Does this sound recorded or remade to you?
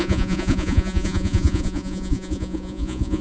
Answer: remade